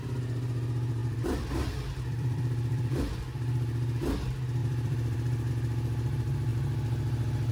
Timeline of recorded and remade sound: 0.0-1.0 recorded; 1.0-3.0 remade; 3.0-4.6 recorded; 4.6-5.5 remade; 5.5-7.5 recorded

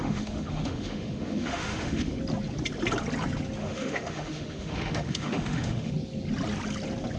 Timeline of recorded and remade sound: 0.0-2.2 remade; 2.2-3.6 recorded; 3.6-5.9 remade; 5.9-7.2 recorded

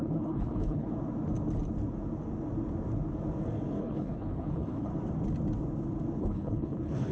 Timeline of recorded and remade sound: 0.0-0.9 remade; 0.9-3.8 recorded; 3.8-4.9 remade; 4.9-6.2 recorded; 6.2-7.1 remade